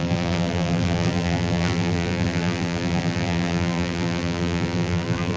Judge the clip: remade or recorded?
remade